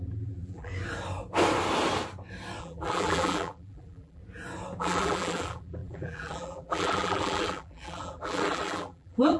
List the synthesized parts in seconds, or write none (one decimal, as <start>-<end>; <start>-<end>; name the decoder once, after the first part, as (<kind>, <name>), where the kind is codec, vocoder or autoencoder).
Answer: 0.0-0.7 (vocoder, BigVGAN v2); 2.6-4.2; 4.8-9.4